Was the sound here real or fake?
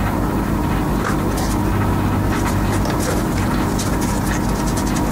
real